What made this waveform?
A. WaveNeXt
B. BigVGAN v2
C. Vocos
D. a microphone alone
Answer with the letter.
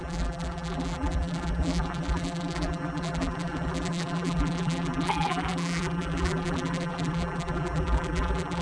B